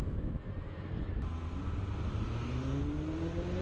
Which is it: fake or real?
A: real